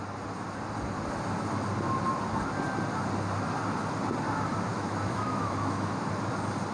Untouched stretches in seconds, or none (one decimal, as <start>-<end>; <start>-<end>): 0.0-4.7; 6.1-6.7